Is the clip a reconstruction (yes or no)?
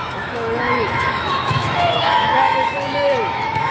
yes